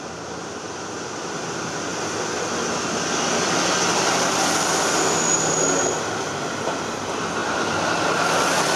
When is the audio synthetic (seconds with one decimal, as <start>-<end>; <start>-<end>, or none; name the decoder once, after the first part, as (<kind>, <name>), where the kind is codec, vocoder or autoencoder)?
none